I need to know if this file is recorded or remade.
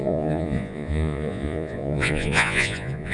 remade